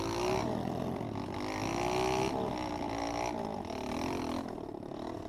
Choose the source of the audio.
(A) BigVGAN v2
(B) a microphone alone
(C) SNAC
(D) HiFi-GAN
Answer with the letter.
B